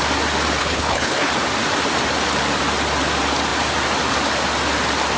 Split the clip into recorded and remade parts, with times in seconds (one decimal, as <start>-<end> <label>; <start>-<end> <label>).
0.0-0.6 recorded; 0.6-1.3 remade; 1.3-5.2 recorded